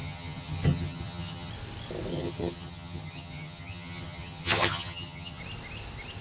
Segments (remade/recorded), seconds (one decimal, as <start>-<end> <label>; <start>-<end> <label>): 0.0-1.5 remade; 1.5-2.1 recorded; 2.1-5.4 remade; 5.4-6.2 recorded